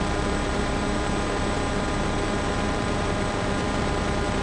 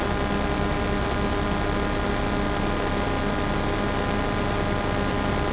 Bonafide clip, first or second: second